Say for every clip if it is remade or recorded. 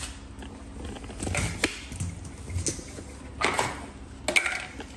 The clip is recorded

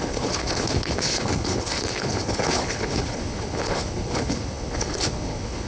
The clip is remade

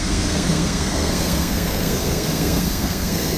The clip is remade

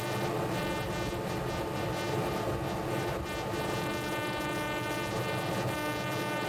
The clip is recorded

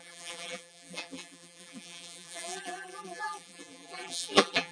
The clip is remade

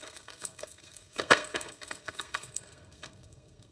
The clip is remade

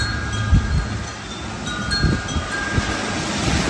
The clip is recorded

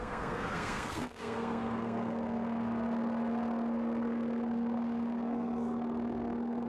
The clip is remade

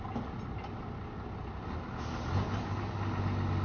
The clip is recorded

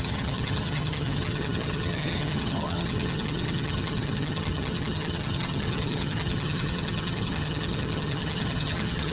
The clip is remade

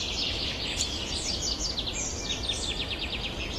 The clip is recorded